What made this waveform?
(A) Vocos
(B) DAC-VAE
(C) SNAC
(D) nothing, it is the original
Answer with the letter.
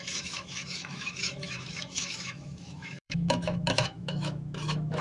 B